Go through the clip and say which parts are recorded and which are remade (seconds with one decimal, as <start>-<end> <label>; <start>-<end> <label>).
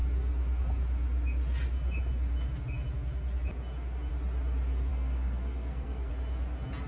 0.0-4.9 recorded; 4.9-6.1 remade; 6.1-6.9 recorded